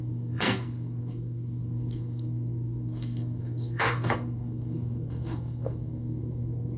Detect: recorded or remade remade